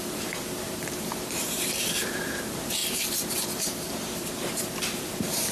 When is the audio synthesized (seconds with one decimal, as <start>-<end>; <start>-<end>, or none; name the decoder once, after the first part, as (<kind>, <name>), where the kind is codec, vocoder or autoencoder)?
0.0-5.5 (vocoder, BigVGAN v2)